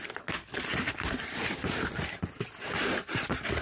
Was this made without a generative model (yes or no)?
yes